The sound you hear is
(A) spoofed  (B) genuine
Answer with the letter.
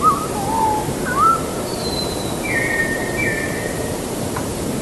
A